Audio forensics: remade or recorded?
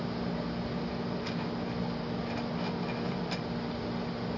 recorded